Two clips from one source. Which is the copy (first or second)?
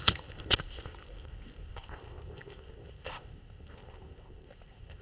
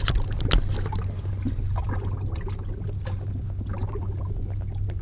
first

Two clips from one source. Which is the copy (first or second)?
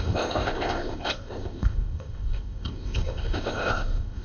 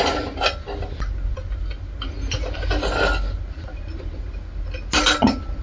first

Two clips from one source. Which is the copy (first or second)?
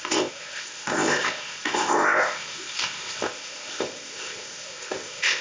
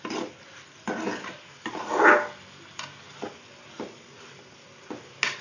first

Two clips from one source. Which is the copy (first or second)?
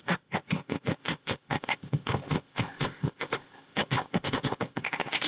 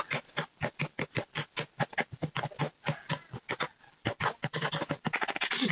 first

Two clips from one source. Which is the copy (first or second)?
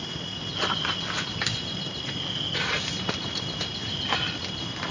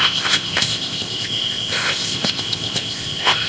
second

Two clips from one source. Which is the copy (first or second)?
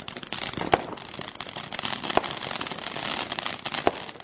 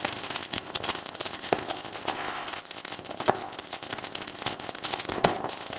second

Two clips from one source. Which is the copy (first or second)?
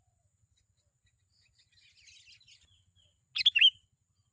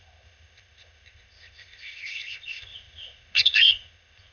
second